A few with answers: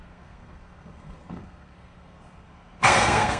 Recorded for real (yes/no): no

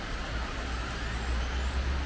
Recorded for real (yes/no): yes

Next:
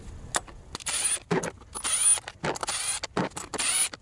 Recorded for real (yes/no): yes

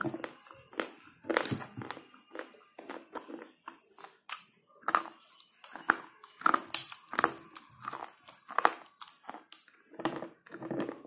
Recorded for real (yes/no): yes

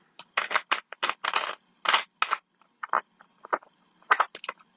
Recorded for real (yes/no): yes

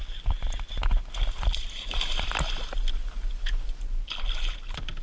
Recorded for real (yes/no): yes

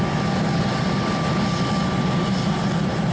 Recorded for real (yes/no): yes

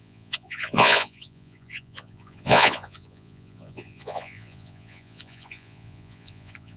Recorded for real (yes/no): no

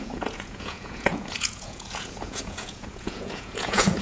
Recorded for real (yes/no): no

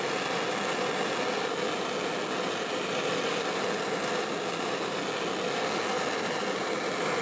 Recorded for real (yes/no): yes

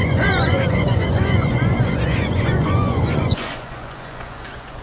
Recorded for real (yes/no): no